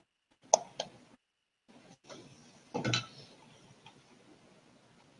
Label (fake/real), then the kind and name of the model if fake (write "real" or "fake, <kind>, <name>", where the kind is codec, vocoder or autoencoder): real